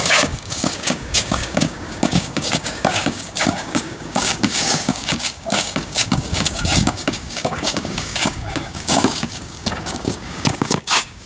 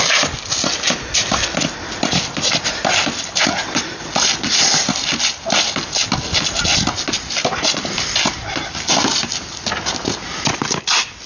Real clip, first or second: second